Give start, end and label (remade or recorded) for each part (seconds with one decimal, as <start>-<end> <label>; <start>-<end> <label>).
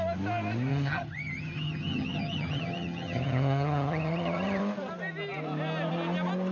0.0-0.7 recorded; 0.7-4.6 remade; 4.6-6.5 recorded